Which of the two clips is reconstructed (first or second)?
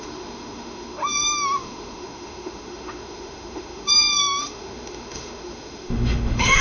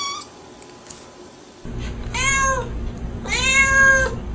first